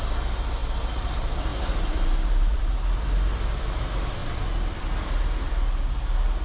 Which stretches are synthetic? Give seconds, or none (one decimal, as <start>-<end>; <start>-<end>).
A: 1.5-3.6